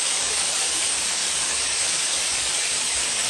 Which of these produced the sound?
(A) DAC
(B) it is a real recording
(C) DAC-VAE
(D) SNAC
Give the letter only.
A